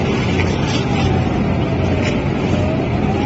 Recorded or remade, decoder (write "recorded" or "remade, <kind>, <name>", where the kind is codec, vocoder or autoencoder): recorded